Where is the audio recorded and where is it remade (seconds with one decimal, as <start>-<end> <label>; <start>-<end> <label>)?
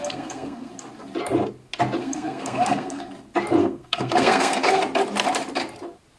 0.0-0.7 remade; 0.7-2.0 recorded; 2.0-3.1 remade; 3.1-3.6 recorded; 3.6-4.8 remade; 4.8-6.2 recorded